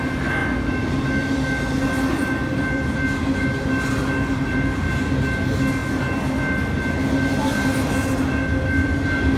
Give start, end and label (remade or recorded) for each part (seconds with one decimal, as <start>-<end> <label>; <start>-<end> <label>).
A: 0.0-9.4 recorded